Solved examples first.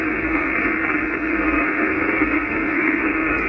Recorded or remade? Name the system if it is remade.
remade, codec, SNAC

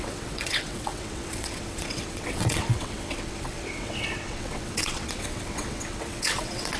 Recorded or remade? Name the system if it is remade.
remade, vocoder, WaveNeXt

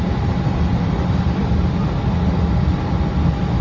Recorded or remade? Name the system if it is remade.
recorded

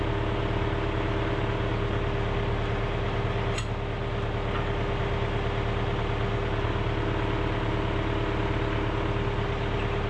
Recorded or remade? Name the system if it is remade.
recorded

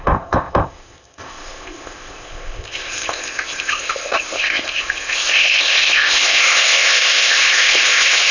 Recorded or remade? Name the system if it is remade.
remade, codec, ZipCodec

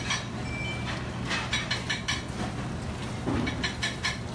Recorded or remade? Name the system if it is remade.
recorded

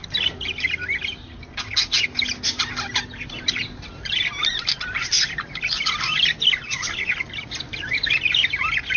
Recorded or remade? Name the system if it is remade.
recorded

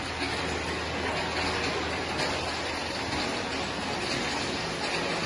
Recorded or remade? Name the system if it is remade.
recorded